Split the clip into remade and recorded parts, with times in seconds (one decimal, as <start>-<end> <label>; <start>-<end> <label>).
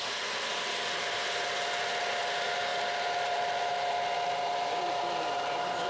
0.0-5.9 recorded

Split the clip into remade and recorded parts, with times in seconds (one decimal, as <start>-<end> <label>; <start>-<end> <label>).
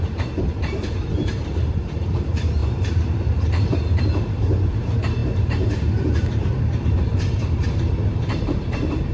0.0-9.1 remade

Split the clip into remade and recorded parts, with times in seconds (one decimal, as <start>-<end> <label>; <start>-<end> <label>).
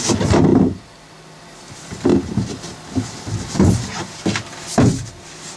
0.0-0.5 remade; 0.5-1.4 recorded; 1.4-2.1 remade; 2.1-3.5 recorded; 3.5-5.6 remade